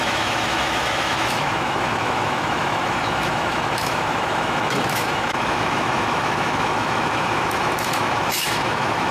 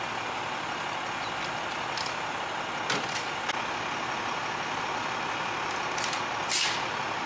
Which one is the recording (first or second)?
second